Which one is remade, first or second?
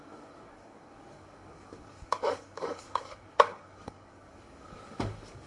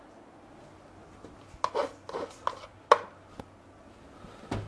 first